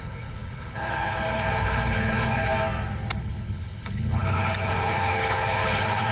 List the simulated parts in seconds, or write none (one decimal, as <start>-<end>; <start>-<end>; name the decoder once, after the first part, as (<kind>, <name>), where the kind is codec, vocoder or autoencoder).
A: 0.0-2.5 (codec, HILCodec); 3.2-6.1